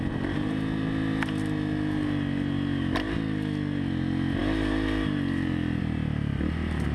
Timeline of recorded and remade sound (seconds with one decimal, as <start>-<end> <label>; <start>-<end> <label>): 0.0-6.9 recorded